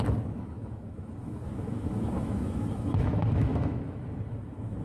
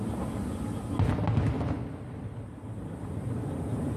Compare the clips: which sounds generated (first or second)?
first